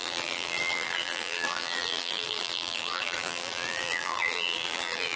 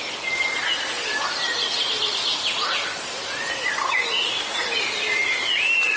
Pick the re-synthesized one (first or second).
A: first